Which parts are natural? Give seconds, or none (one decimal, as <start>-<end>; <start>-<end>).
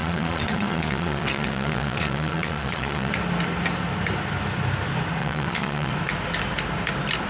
3.1-5.2; 5.9-7.3